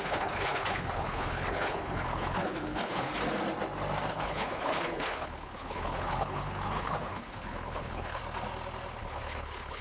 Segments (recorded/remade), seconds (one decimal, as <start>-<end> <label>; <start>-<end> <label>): 0.0-3.1 remade; 3.1-4.1 recorded; 4.1-8.2 remade; 8.2-9.0 recorded; 9.0-9.8 remade